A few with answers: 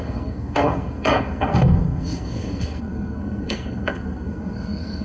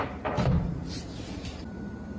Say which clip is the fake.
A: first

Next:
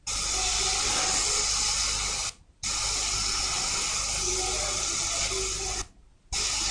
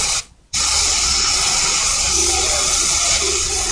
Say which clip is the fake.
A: second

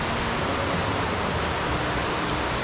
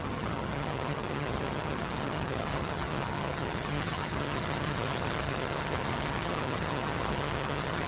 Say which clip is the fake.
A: second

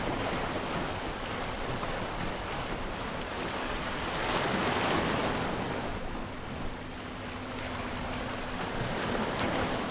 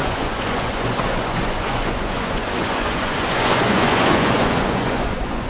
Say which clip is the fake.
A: second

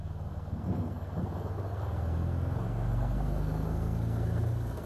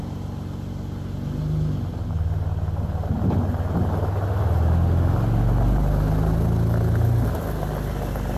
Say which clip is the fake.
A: first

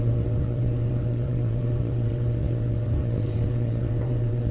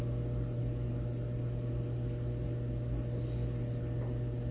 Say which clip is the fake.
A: first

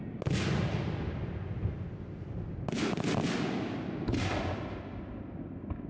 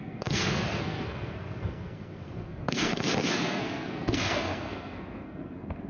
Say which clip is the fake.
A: second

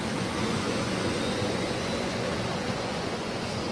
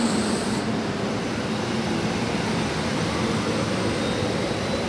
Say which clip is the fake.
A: first